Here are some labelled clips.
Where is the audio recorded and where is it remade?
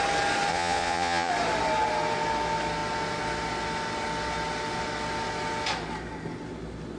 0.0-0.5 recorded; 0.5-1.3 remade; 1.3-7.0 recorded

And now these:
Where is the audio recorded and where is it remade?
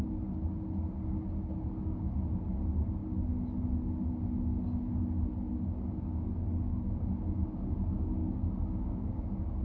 0.0-9.6 recorded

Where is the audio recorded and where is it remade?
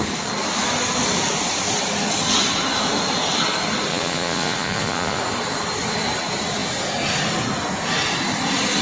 0.0-3.9 recorded; 3.9-5.2 remade; 5.2-8.8 recorded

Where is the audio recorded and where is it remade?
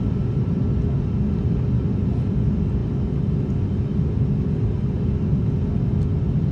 0.0-6.5 recorded